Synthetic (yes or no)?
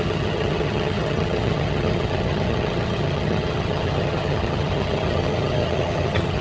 yes